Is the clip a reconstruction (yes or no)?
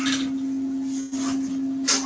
no